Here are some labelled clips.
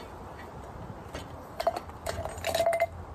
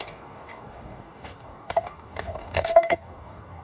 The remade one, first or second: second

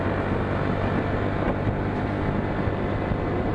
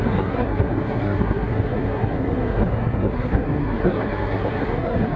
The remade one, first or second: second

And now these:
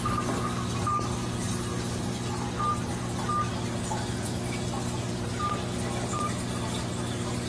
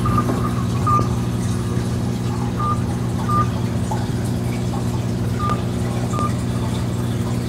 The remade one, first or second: second